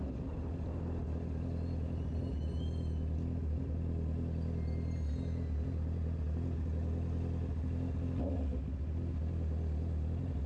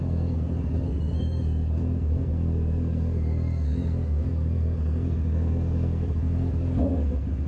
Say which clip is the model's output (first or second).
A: second